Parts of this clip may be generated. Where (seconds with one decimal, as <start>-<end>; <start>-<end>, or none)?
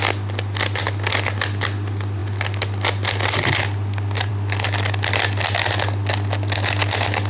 none